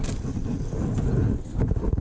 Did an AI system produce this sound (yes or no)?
no